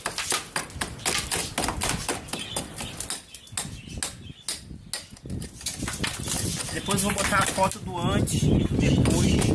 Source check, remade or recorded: recorded